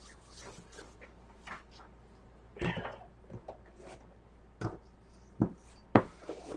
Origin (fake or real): real